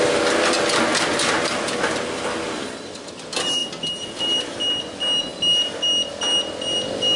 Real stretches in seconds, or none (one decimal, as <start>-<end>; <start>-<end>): 0.0-7.2